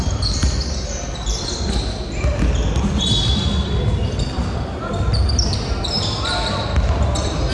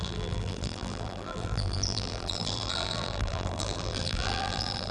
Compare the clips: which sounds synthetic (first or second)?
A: second